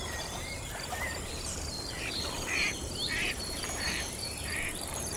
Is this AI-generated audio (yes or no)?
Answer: yes